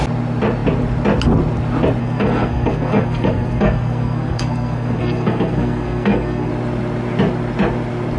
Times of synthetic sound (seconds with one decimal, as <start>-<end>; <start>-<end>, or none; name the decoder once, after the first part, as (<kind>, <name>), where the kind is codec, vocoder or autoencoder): 2.0-6.5 (codec, SNAC)